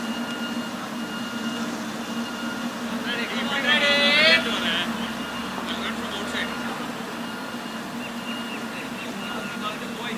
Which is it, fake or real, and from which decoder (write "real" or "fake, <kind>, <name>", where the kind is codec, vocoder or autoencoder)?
real